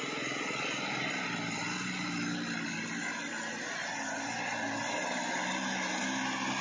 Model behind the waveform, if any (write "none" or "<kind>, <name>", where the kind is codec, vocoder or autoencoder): none